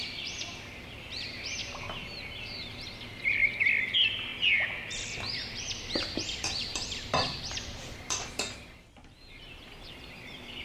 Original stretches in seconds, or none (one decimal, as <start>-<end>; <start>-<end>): 1.6-3.9; 4.3-5.5